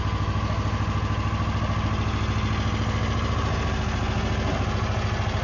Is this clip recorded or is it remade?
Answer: recorded